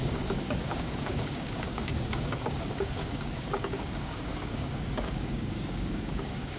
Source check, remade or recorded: remade